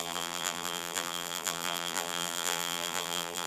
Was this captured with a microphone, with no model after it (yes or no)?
no